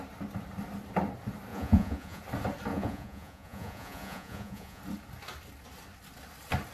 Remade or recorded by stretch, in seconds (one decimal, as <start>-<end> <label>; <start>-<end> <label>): 0.0-1.5 recorded; 1.5-2.2 remade; 2.2-2.7 recorded; 2.7-4.8 remade; 4.8-6.7 recorded